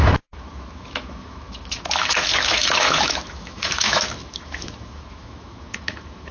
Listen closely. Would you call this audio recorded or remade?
remade